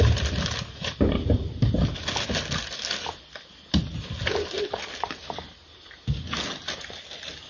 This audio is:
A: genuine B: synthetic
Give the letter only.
A